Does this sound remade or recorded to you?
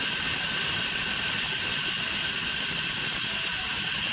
recorded